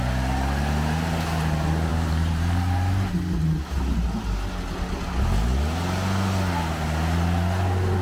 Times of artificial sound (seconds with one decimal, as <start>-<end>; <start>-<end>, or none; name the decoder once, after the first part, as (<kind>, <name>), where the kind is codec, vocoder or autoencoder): 1.9-3.1 (vocoder, BigVGAN v2)